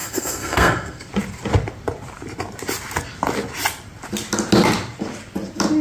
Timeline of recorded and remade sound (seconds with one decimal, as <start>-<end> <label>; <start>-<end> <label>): 0.0-1.1 remade; 1.1-5.8 recorded